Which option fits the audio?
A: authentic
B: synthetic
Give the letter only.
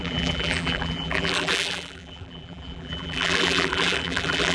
B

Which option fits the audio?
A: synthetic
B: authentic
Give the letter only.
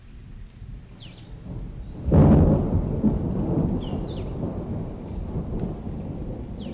B